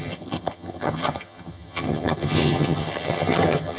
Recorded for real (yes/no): no